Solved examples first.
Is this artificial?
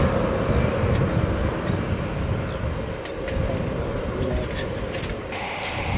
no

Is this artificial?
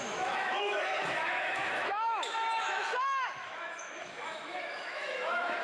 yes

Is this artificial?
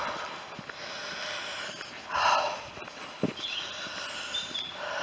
no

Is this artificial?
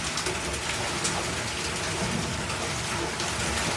no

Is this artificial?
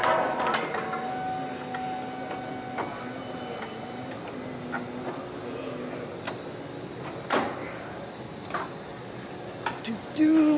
no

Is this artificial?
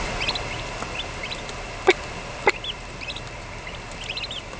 no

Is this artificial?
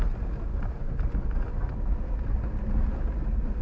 no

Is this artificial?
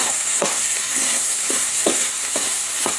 yes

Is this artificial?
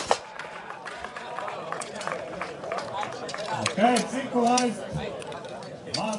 yes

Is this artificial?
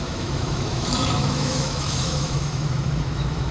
yes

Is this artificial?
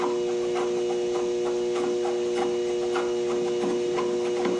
no